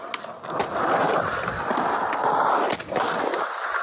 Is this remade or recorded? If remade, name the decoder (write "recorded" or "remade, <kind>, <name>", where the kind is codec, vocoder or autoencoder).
recorded